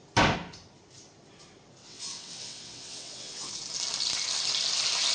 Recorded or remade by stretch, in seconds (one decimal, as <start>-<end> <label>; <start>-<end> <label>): 0.0-1.8 recorded; 1.8-3.5 remade; 3.5-5.1 recorded